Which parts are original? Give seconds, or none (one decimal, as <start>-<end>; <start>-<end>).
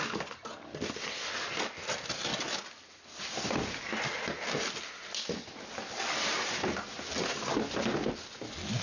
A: 0.0-8.8